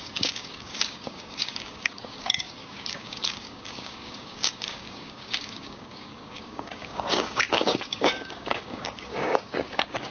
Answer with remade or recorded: remade